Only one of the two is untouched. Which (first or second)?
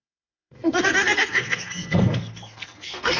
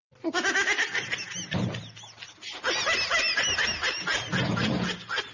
second